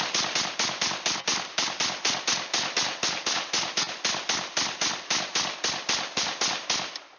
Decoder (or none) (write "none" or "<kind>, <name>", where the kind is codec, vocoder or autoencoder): none